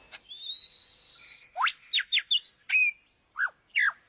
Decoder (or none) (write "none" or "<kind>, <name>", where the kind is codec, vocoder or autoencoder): none